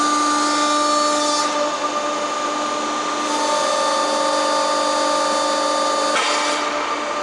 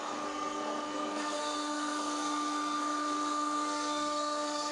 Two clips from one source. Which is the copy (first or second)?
second